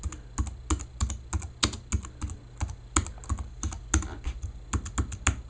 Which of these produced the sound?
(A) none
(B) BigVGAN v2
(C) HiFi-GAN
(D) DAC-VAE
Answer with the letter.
A